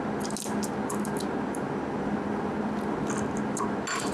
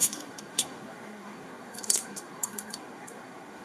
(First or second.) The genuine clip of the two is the first